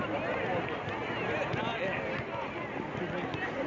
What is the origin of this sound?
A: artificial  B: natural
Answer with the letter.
B